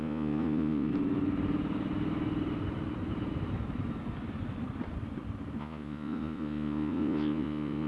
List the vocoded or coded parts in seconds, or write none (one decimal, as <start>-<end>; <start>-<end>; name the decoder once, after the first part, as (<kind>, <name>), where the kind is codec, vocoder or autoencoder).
0.0-0.9 (vocoder, Vocos); 5.6-7.9